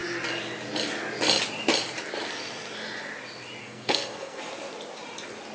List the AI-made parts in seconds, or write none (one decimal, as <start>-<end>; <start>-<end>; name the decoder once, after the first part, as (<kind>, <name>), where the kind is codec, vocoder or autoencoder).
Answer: 3.6-4.4 (codec, SNAC)